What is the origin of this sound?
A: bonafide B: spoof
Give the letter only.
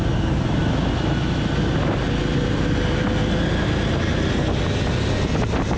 A